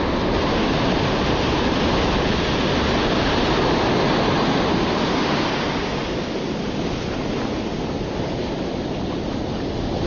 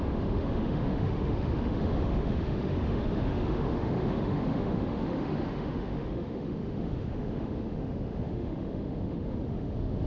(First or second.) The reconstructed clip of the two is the second